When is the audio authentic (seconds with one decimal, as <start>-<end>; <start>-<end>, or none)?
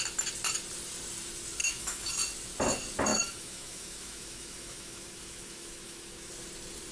0.0-1.6; 2.1-3.1; 6.3-6.9